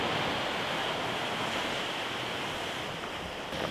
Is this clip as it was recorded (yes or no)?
yes